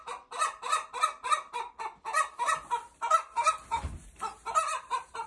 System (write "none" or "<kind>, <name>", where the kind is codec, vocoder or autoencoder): none